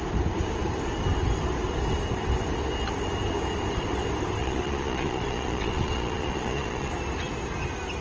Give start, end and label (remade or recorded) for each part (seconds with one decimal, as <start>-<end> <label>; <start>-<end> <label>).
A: 0.0-4.4 recorded; 4.4-6.9 remade; 6.9-8.0 recorded